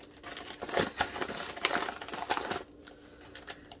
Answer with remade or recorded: recorded